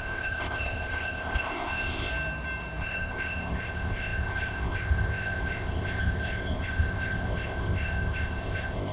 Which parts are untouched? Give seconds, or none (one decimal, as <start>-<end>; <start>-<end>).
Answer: 2.1-2.8